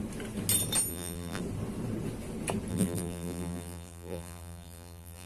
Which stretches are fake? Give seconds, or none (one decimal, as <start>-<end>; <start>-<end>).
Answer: 0.9-1.4; 2.7-5.3